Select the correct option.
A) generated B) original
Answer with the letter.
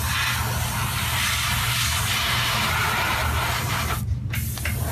B